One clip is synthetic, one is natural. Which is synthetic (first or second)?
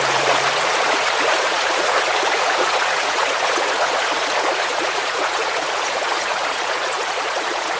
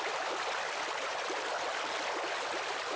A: first